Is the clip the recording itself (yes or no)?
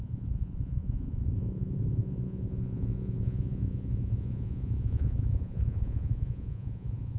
no